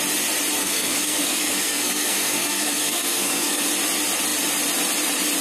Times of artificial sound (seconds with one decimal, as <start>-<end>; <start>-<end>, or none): 0.6-3.6